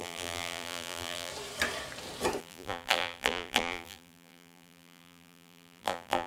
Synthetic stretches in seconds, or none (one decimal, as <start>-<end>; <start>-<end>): 0.0-1.3; 2.4-6.3